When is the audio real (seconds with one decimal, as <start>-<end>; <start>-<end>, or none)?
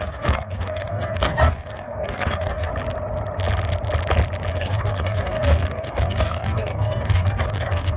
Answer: 2.7-4.5